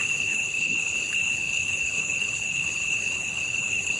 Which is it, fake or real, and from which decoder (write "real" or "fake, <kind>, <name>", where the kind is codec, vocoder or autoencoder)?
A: fake, codec, HILCodec